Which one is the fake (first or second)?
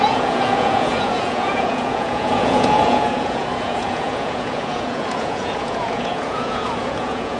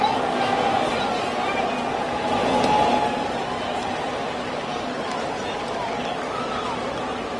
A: first